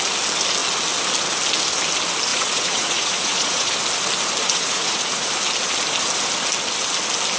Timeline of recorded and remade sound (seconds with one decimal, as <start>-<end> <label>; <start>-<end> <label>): 0.0-2.3 recorded; 2.3-3.7 remade; 3.7-4.4 recorded; 4.4-5.3 remade; 5.3-7.4 recorded

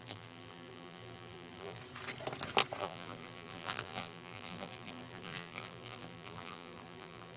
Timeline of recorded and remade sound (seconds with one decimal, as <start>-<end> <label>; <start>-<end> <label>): 0.0-1.8 remade; 1.8-2.8 recorded; 2.8-7.4 remade

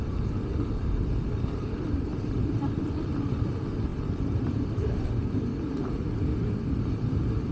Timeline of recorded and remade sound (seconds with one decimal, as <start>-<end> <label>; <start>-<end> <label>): 0.0-2.1 recorded; 2.1-2.8 remade; 2.8-3.9 recorded; 3.9-6.8 remade; 6.8-7.5 recorded